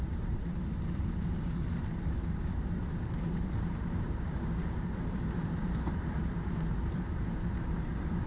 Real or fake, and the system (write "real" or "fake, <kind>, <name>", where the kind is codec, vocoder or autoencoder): fake, vocoder, BigVGAN v2